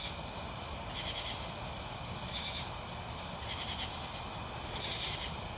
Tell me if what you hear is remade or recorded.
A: recorded